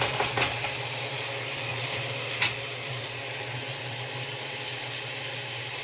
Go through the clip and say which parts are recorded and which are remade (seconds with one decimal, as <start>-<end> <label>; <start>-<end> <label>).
0.0-5.8 recorded